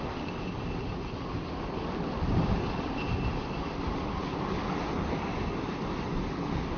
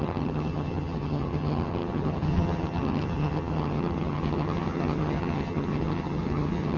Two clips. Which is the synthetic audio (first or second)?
second